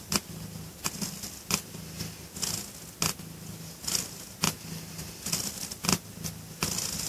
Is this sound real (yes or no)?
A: yes